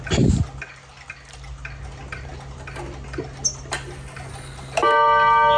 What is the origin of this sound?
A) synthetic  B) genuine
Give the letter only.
B